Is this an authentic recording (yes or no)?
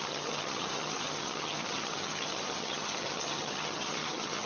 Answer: no